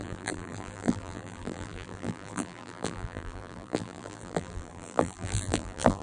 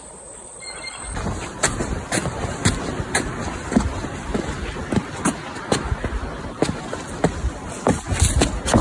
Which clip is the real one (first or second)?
second